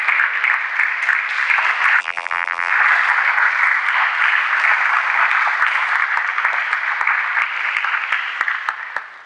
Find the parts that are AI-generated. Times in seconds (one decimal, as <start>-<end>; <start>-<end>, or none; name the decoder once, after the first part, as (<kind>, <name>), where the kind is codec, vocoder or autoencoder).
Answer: 2.0-2.7 (vocoder, BigVGAN v2)